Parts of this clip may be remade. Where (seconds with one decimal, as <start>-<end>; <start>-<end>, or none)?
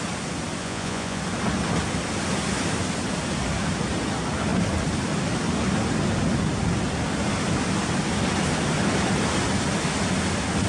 0.6-1.2